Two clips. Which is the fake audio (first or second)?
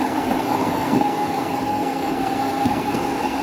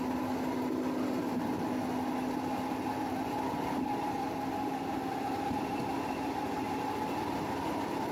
first